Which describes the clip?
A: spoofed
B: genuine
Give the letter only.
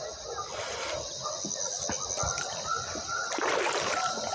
B